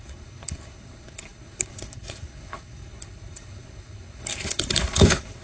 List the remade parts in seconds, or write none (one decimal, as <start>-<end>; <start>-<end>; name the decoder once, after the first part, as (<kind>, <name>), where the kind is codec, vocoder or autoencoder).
0.0-5.4 (codec, HILCodec)